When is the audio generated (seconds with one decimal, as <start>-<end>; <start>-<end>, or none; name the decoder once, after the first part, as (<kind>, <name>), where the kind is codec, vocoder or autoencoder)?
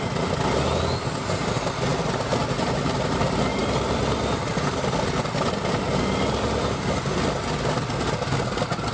none